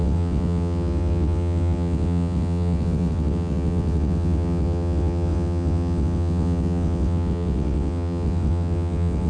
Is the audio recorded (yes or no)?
no